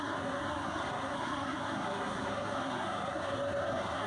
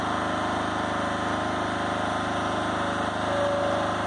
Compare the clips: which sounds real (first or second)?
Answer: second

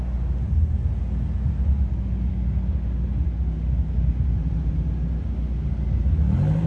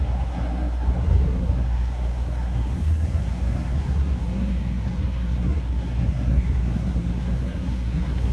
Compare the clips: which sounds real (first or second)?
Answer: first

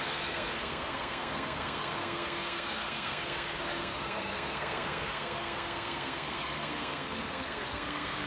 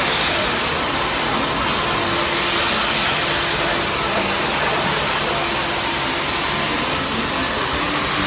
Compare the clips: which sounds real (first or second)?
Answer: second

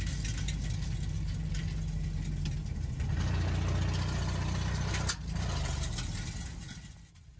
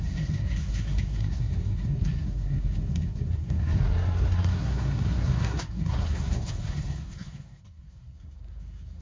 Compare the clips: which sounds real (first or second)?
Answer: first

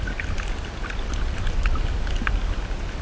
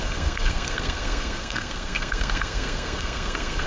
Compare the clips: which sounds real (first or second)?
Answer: first